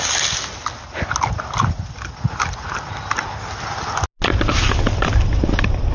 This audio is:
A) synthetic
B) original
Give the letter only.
B